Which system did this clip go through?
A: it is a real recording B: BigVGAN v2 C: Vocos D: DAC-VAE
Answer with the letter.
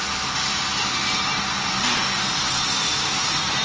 A